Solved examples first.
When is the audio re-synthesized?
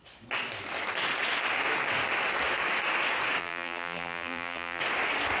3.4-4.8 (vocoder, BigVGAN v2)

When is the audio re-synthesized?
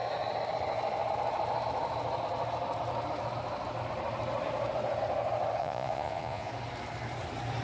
5.6-6.5 (vocoder, Vocos)